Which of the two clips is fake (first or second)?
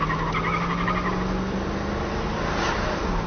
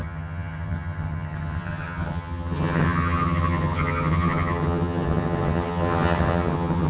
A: second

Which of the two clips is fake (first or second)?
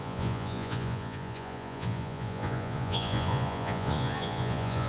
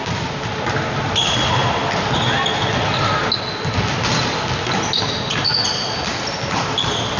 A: first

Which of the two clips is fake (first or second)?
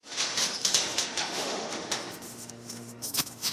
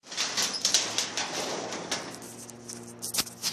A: first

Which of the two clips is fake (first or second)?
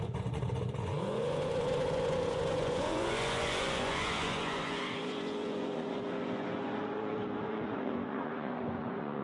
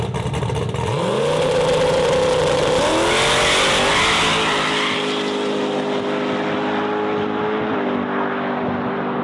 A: first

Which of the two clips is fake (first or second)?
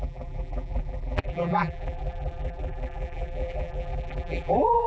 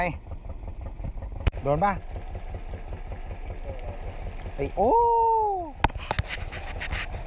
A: first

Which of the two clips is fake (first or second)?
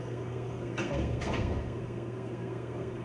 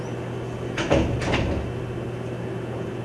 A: first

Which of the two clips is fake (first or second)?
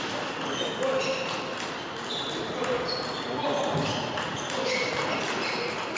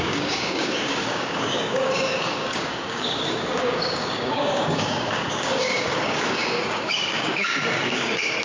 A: second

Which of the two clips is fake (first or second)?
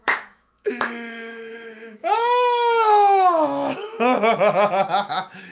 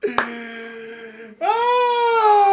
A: first